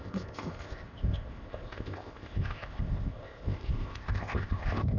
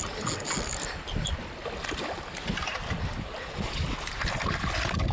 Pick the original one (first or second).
second